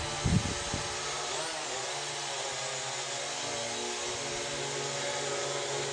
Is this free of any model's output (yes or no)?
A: yes